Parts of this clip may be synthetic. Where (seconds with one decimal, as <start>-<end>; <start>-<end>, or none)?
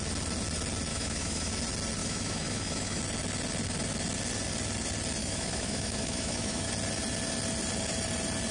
0.9-1.5; 2.0-3.0; 5.2-6.7